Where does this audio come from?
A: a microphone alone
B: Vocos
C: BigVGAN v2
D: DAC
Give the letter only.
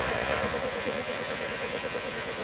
B